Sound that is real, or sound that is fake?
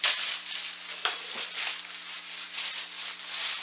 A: real